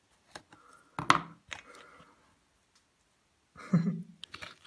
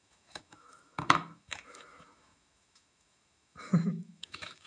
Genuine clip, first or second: first